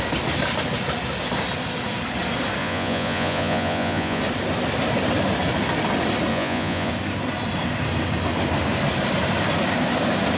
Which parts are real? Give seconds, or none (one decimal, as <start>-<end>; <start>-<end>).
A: 0.0-2.6; 4.2-6.3; 6.9-10.4